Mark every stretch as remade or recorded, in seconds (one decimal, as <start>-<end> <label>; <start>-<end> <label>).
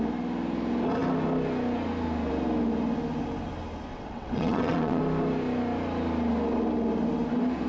0.0-3.9 recorded; 3.9-5.0 remade; 5.0-7.7 recorded